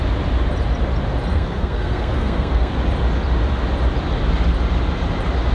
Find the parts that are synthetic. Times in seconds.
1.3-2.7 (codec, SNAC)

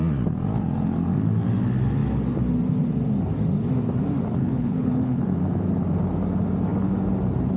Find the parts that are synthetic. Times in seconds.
4.4-5.2 (codec, HILCodec)

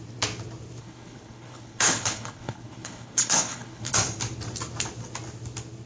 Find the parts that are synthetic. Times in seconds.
0.8-3.9 (codec, HILCodec)

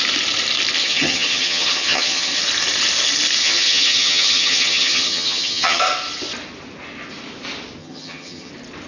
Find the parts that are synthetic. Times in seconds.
0.8-2.4 (vocoder, HiFi-GAN); 3.4-5.8; 7.8-8.5

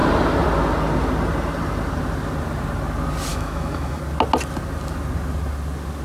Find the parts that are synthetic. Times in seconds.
3.3-4.0 (autoencoder, DAC-VAE)

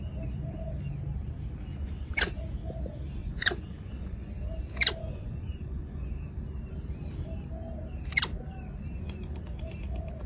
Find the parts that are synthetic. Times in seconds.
1.7-2.2 (vocoder, Vocos); 3.2-4.3; 5.0-6.1

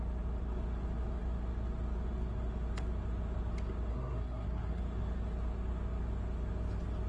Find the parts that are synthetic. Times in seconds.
3.9-4.8 (codec, SNAC)